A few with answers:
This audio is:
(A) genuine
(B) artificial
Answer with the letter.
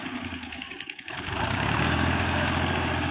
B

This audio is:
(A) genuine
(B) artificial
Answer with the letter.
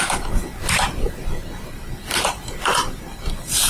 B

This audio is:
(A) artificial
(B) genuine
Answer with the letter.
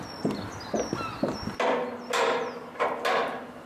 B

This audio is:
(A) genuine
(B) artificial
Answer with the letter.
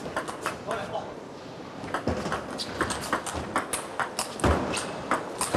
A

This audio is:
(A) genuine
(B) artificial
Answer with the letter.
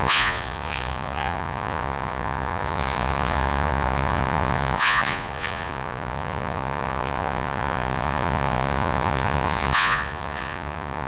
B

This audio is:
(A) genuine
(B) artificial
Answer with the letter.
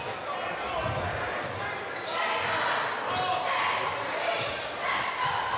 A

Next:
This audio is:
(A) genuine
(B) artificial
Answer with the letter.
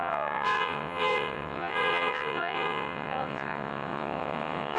B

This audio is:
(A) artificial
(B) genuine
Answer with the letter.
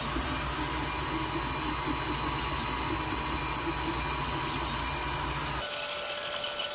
B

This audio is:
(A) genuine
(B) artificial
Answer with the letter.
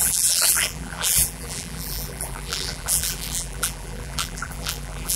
B